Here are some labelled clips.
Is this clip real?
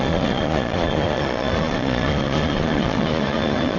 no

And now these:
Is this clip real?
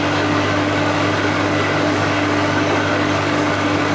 no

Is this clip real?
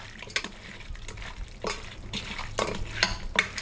yes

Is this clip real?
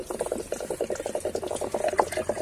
yes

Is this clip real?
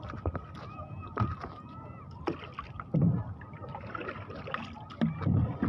yes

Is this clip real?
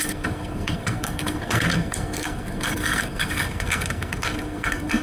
no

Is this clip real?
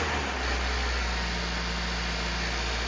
yes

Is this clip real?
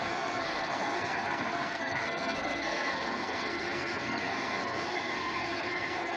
no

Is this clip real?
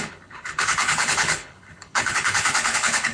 no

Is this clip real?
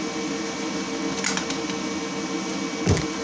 yes